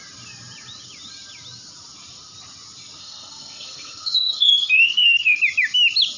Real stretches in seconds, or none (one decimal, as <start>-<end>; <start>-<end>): 0.0-3.0; 5.4-6.2